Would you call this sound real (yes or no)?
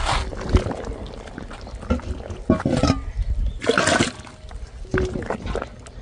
yes